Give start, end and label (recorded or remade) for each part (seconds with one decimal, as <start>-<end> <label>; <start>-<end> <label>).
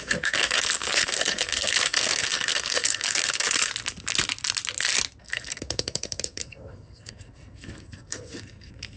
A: 0.0-3.7 remade; 3.7-5.2 recorded; 5.2-9.0 remade